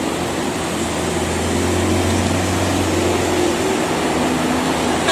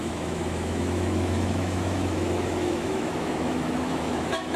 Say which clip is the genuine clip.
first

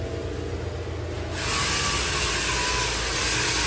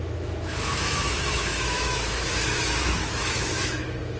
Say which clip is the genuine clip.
first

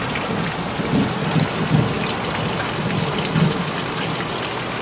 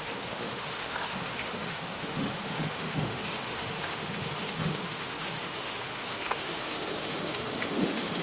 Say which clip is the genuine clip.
first